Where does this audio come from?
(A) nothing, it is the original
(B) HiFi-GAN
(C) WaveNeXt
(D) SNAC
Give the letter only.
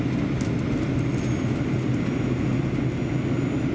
A